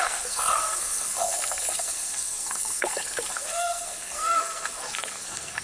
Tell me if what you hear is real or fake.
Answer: fake